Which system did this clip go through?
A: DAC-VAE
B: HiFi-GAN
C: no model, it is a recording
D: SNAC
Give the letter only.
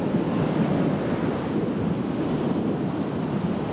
C